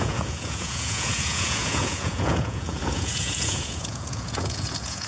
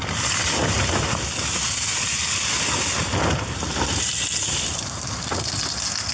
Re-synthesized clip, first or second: first